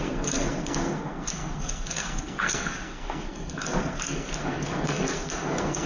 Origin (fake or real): fake